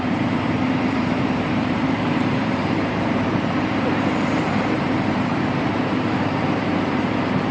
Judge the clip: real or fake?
fake